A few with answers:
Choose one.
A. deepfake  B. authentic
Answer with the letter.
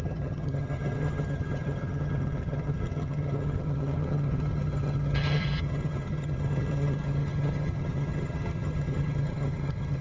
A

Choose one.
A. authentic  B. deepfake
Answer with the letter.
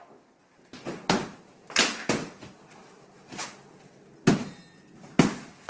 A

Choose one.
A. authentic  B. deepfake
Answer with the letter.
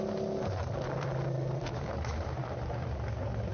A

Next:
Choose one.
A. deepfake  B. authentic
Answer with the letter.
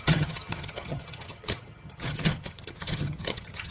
A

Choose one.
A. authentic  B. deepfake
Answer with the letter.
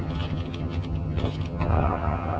B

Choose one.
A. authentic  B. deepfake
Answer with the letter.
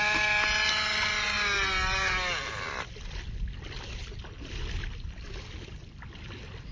A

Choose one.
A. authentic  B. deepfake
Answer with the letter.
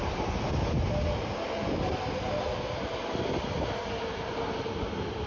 A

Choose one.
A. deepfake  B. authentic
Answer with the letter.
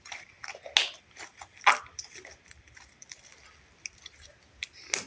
B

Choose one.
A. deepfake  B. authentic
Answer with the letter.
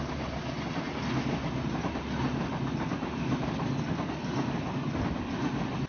B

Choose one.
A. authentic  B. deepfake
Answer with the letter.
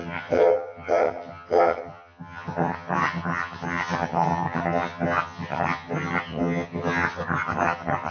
B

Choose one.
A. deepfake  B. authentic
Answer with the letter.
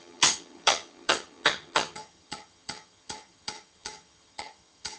A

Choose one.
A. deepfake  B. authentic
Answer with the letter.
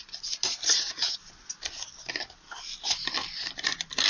B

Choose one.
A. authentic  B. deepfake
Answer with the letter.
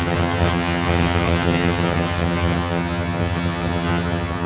B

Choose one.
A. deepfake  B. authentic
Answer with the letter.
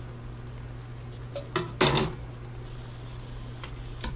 B